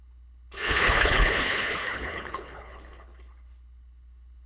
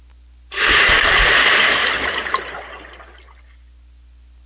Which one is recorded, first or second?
second